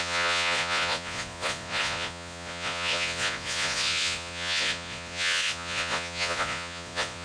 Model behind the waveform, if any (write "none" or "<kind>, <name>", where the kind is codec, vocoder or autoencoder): vocoder, Vocos